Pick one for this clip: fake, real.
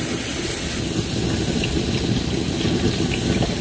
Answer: real